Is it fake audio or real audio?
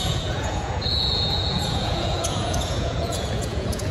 fake